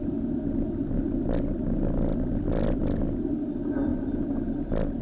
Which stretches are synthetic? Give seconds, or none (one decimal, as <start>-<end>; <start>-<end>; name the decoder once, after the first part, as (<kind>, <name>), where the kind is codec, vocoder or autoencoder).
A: none